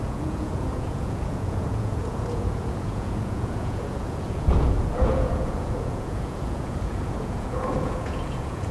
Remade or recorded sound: remade